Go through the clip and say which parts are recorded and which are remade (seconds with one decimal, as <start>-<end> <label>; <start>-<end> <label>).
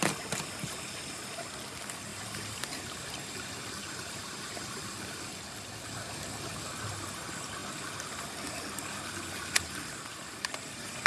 0.0-2.1 recorded; 2.1-5.2 remade; 5.2-11.1 recorded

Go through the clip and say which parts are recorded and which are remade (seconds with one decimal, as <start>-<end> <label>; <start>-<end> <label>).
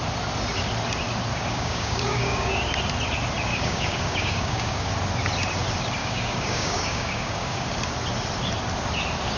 0.0-1.3 recorded; 1.3-2.7 remade; 2.7-3.5 recorded; 3.5-4.9 remade; 4.9-6.0 recorded; 6.0-7.6 remade; 7.6-9.4 recorded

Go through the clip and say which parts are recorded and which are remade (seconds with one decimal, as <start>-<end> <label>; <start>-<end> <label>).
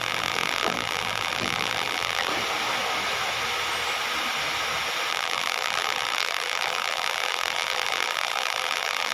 0.0-2.3 remade; 2.3-5.1 recorded; 5.1-9.1 remade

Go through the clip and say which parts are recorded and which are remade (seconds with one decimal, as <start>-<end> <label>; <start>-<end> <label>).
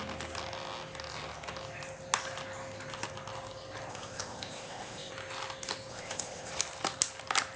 0.0-3.9 recorded; 3.9-5.1 remade; 5.1-5.9 recorded; 5.9-6.5 remade; 6.5-7.6 recorded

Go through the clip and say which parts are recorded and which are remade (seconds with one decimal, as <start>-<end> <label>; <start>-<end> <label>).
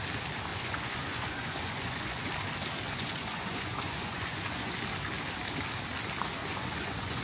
0.0-0.5 recorded; 0.5-2.3 remade; 2.3-2.9 recorded; 2.9-4.7 remade; 4.7-6.4 recorded; 6.4-7.2 remade